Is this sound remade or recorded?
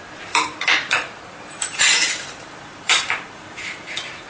remade